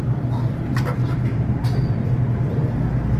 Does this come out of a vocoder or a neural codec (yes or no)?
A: no